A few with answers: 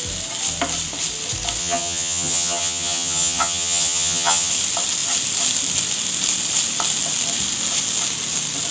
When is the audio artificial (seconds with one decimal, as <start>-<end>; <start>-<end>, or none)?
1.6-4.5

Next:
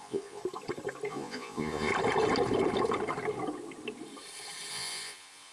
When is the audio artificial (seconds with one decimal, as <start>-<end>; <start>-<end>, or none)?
0.0-0.4; 1.1-1.9; 4.7-5.5

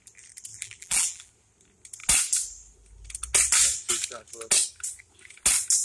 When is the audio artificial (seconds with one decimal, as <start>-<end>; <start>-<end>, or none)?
0.5-1.3

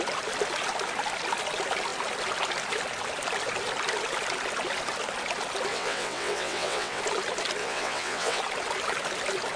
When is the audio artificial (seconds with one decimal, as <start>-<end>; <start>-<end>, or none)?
5.7-7.0; 7.6-8.4

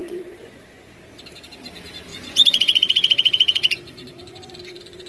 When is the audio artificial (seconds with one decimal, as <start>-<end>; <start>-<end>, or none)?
0.0-0.9; 2.1-5.1

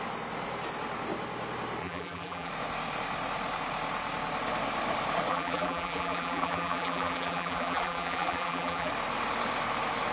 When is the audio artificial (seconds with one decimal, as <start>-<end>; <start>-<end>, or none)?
1.8-2.5; 5.3-8.9